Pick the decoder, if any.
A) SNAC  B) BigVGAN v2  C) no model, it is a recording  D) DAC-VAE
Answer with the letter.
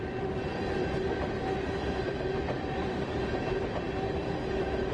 C